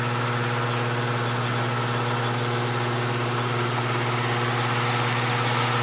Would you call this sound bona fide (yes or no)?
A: yes